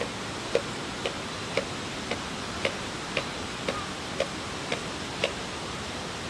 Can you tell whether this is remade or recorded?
recorded